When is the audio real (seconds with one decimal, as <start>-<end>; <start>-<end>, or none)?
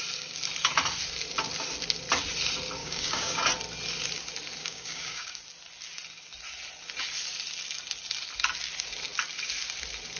0.0-2.8; 3.4-4.6; 5.4-10.2